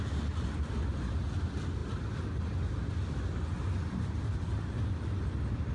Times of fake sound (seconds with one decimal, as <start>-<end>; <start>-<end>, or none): none